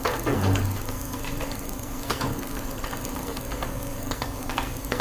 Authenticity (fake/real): fake